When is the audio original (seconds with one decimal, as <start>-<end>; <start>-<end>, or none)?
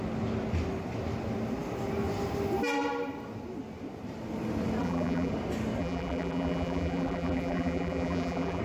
0.0-4.8; 5.3-5.8